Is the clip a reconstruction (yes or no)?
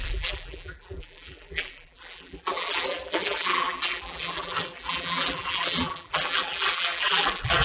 yes